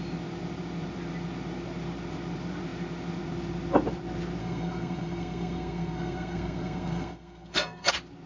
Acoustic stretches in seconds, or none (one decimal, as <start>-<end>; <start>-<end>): 0.0-4.4; 7.9-8.3